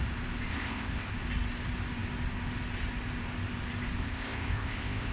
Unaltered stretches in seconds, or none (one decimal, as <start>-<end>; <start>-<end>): 0.0-0.5; 1.1-4.0